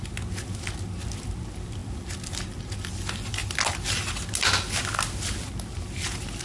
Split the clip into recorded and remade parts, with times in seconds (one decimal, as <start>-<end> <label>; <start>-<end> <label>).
0.0-6.4 recorded